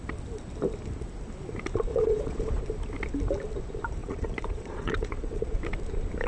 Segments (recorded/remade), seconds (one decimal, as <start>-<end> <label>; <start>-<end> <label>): 0.0-1.9 recorded; 1.9-2.6 remade; 2.6-4.0 recorded; 4.0-5.6 remade; 5.6-6.3 recorded